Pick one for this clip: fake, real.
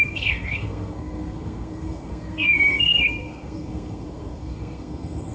fake